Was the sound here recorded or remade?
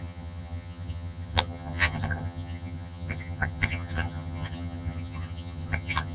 remade